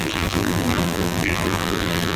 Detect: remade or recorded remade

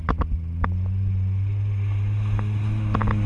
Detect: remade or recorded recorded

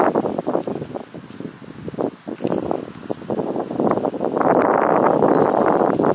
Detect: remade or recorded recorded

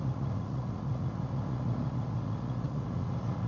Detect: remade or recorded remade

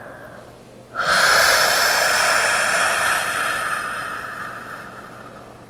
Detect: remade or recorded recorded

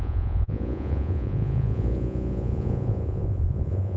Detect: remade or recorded remade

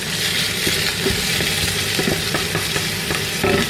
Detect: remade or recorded recorded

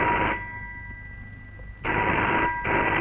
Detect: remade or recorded recorded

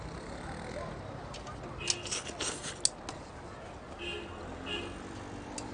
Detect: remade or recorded recorded